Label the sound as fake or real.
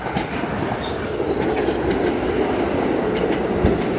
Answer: real